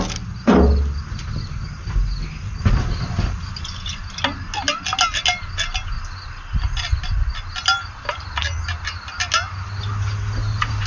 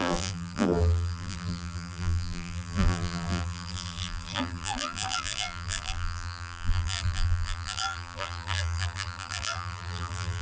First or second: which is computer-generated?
second